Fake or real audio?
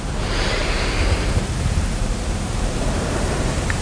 fake